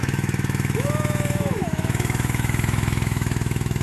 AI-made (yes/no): yes